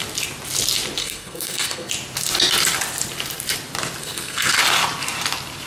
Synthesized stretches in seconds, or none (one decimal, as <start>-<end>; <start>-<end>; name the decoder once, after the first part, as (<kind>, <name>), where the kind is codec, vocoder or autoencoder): 1.0-1.9 (codec, SNAC); 4.0-4.6